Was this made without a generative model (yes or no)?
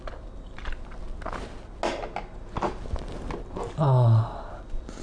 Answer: yes